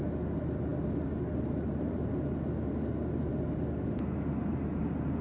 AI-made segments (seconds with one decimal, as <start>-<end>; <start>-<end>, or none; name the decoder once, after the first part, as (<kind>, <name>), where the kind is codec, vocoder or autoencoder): none